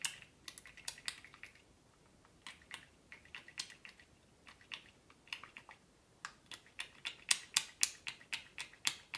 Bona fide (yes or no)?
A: yes